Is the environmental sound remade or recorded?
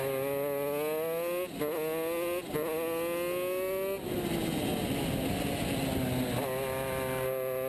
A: recorded